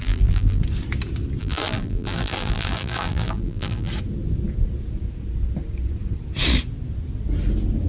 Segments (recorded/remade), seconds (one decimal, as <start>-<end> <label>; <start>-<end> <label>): 0.0-0.6 remade; 0.6-1.4 recorded; 1.4-3.9 remade; 3.9-7.9 recorded